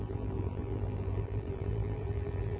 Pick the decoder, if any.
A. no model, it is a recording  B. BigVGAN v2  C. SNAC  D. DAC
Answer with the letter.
B